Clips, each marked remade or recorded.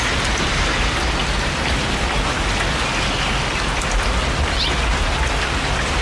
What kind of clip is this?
recorded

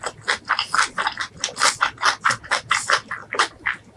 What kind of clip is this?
recorded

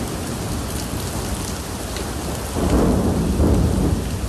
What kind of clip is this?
recorded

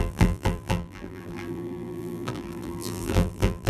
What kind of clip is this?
remade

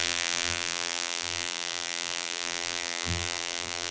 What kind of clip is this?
remade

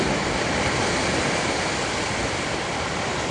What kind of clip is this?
remade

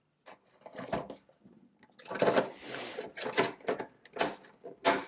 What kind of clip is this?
recorded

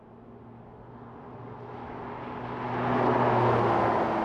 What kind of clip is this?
recorded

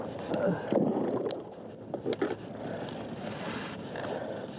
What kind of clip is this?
remade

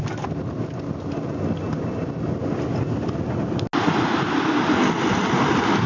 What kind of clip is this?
recorded